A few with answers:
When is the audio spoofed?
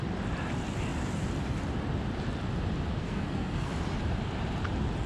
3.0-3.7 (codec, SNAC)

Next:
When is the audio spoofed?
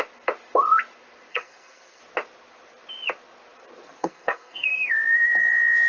1.3-2.0 (codec, SNAC); 4.0-4.9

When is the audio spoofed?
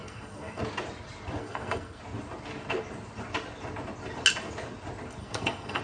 0.0-0.6 (codec, SNAC); 1.4-2.0; 5.2-5.8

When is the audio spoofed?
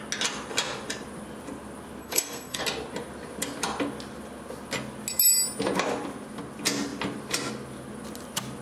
2.0-2.6 (codec, SNAC)